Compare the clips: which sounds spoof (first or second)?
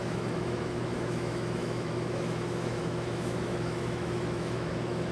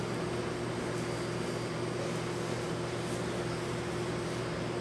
first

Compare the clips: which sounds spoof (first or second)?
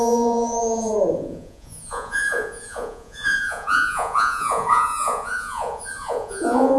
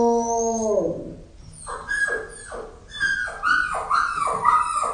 first